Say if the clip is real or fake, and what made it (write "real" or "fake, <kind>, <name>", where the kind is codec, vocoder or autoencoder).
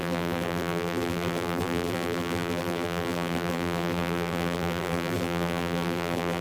fake, vocoder, BigVGAN v2